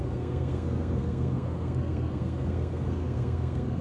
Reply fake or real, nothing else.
fake